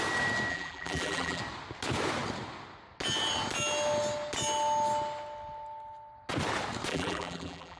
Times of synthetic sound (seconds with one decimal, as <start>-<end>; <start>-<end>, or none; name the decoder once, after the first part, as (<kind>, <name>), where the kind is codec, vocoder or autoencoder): 0.5-1.4 (vocoder, BigVGAN v2); 6.9-7.8